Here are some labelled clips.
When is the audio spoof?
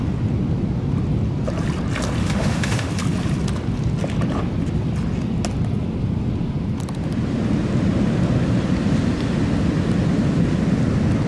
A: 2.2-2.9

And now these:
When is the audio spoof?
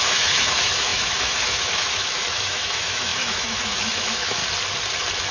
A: 0.0-4.4